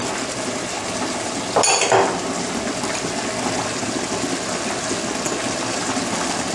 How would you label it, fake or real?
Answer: real